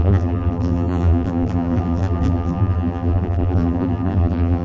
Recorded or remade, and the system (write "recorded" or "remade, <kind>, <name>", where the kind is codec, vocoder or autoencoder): remade, vocoder, BigVGAN v2